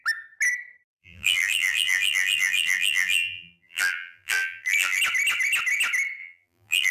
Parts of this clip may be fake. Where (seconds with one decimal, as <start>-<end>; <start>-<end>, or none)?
0.9-5.0; 6.2-6.9